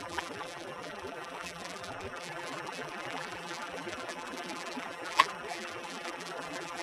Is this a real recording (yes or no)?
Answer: no